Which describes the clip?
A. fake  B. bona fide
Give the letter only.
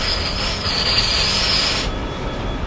B